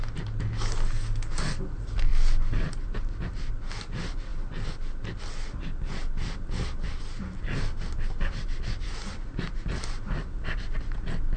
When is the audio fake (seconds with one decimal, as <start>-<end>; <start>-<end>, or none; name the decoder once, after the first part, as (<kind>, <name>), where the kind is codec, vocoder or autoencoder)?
none